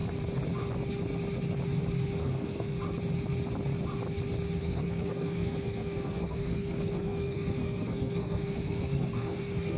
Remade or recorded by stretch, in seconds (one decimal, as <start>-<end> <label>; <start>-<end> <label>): 0.0-2.2 recorded; 2.2-2.8 remade; 2.8-4.6 recorded; 4.6-9.8 remade